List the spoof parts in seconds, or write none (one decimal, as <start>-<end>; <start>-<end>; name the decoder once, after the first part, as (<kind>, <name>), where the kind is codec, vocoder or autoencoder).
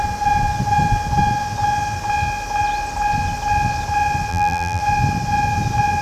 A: 4.3-4.8 (vocoder, BigVGAN v2)